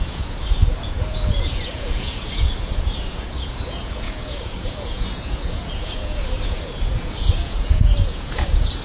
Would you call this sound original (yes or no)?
no